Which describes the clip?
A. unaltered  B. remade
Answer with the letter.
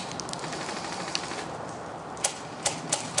A